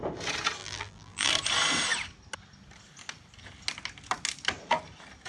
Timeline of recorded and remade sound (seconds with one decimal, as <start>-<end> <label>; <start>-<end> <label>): 0.0-0.6 recorded; 0.6-1.3 remade; 1.3-5.3 recorded